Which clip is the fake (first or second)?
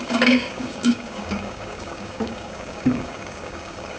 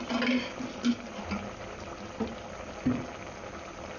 first